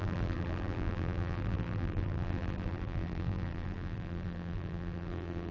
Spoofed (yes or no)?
yes